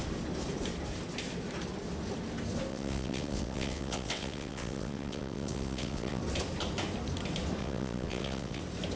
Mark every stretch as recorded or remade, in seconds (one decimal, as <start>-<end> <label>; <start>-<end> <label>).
0.0-2.7 recorded; 2.7-6.2 remade; 6.2-7.6 recorded; 7.6-8.6 remade; 8.6-9.0 recorded